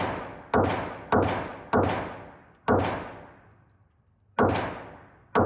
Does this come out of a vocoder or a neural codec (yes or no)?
no